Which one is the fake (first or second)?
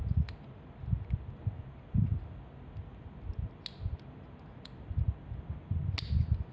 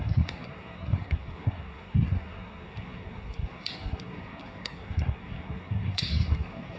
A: second